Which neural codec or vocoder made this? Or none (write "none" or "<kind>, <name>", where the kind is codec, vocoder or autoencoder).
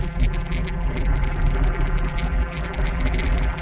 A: vocoder, BigVGAN v2